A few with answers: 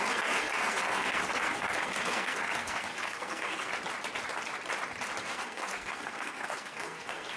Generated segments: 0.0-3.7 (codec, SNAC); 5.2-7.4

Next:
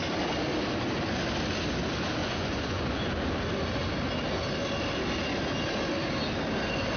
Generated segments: 2.2-3.1 (vocoder, Vocos)

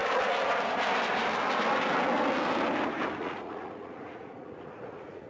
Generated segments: 3.2-5.3 (vocoder, Vocos)

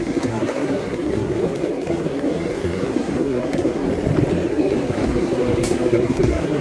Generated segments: 0.0-3.9 (codec, SNAC); 4.5-6.6

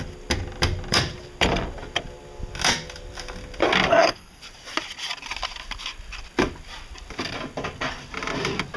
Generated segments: 3.9-4.4 (codec, SNAC)